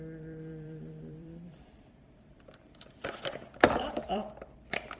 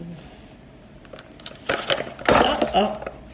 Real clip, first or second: second